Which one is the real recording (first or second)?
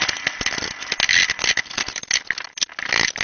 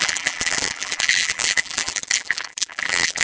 first